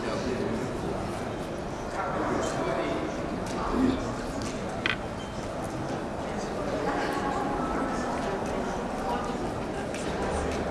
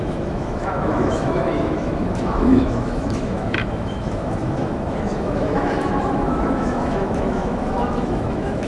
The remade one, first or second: second